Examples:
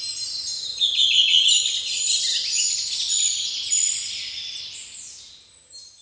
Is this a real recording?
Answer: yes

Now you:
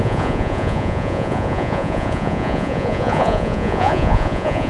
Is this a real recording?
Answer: no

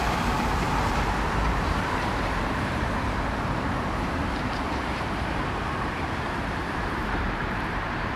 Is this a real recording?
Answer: no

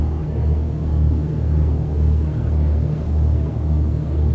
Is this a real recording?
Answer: no